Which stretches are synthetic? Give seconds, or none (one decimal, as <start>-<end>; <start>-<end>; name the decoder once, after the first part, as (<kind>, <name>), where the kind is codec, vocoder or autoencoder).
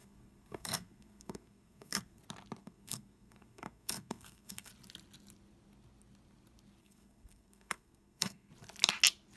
0.0-2.2 (codec, SNAC); 2.6-4.7; 6.8-8.5